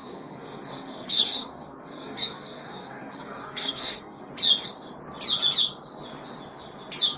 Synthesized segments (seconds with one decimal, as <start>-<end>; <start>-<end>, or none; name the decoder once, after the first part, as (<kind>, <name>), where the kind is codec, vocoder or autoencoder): 0.0-4.3 (codec, SNAC)